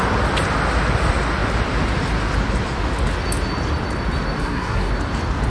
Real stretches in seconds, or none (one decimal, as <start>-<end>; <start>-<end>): 0.0-4.4; 4.9-5.5